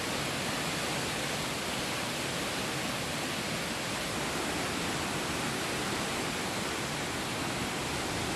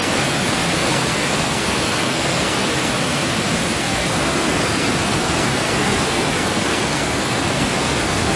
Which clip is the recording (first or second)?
first